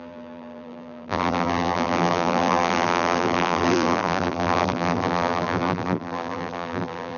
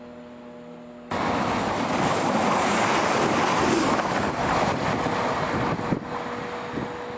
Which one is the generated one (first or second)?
first